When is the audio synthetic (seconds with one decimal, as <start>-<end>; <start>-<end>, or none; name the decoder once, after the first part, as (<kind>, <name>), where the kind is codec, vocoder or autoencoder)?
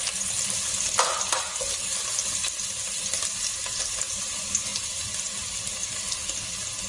none